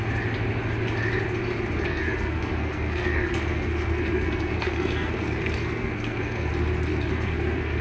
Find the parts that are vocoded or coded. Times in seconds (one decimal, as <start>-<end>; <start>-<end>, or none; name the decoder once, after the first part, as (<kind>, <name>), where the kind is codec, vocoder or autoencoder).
1.9-6.5 (codec, SNAC); 6.9-7.8